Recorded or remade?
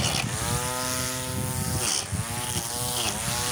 recorded